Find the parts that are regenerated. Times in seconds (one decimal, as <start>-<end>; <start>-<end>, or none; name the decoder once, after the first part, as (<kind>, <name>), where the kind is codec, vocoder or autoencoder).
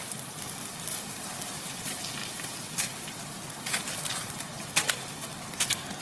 0.9-1.5 (vocoder, BigVGAN v2); 2.2-3.6